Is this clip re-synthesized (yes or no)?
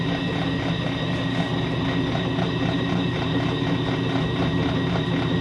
no